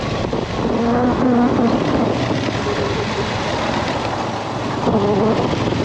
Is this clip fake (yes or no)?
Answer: no